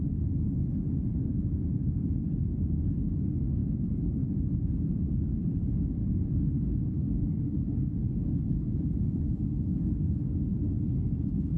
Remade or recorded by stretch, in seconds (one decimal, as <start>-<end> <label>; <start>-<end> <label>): 0.0-6.0 recorded; 6.0-10.4 remade; 10.4-11.6 recorded